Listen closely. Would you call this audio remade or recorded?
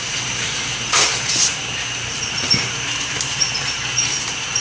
remade